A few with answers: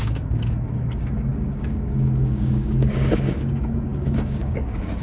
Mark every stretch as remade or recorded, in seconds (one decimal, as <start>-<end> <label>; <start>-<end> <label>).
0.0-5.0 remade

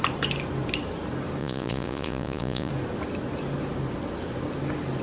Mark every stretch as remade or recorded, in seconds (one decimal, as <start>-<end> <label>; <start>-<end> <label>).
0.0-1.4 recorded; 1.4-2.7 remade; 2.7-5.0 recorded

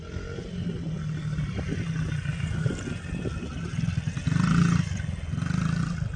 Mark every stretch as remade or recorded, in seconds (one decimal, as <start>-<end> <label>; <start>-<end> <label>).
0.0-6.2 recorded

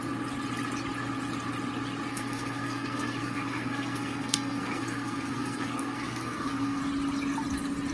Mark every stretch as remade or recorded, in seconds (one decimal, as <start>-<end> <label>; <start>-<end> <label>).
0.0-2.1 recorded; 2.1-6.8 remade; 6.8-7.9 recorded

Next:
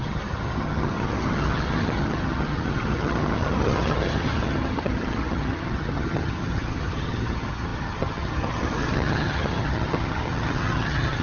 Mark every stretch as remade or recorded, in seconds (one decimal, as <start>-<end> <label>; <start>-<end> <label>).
0.0-11.2 remade